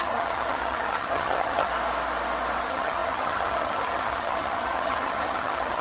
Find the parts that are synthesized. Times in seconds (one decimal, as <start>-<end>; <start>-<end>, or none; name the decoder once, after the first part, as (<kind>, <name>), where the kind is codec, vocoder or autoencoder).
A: 0.0-1.7 (vocoder, HiFi-GAN); 2.6-5.8